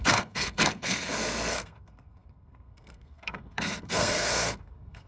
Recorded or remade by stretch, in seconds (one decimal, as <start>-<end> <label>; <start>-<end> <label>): 0.0-5.1 remade